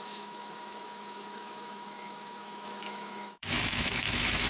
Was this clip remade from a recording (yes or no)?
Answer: yes